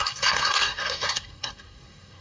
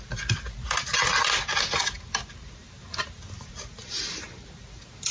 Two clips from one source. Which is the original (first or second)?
second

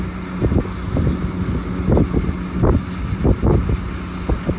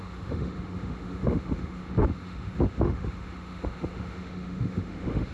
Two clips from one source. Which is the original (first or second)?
first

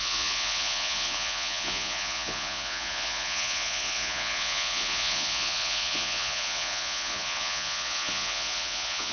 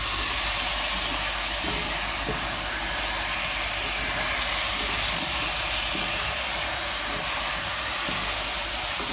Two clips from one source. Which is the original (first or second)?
second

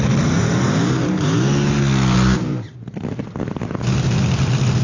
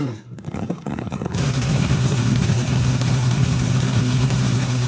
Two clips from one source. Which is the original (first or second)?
first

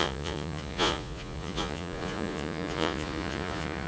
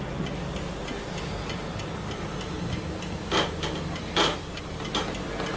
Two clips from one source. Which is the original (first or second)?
second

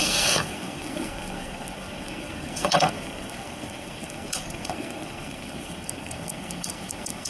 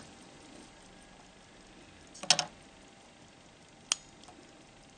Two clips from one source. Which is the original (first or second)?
second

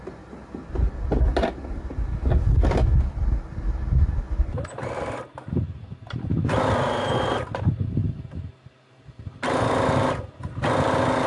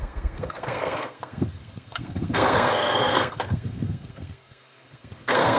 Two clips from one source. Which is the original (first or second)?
first